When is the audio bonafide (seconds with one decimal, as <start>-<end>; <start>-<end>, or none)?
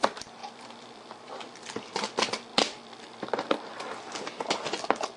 0.0-0.4; 1.9-2.5